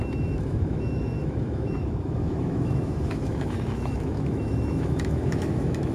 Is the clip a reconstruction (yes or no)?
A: yes